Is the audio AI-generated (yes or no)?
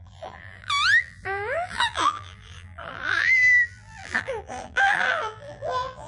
yes